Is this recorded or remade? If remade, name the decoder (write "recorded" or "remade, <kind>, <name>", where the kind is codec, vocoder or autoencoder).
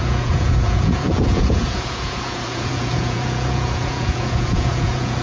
remade, vocoder, Vocos